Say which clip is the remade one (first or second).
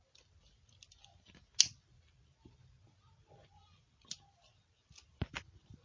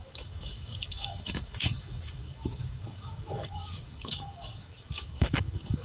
second